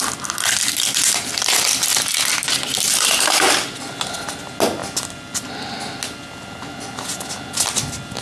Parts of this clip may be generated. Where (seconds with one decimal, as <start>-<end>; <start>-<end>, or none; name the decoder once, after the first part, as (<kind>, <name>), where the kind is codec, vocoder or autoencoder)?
none